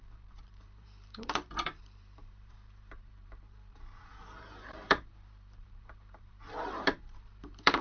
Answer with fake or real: fake